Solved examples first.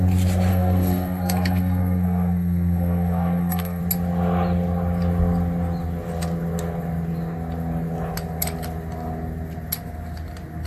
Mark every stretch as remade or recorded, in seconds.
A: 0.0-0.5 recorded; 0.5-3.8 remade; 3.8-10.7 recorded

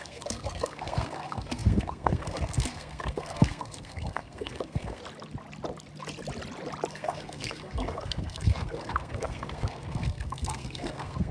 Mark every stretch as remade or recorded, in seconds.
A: 0.0-5.0 remade; 5.0-6.9 recorded; 6.9-11.3 remade